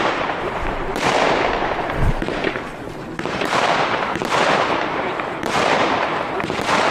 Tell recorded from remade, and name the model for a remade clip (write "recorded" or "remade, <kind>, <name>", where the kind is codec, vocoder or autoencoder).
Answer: remade, vocoder, BigVGAN v2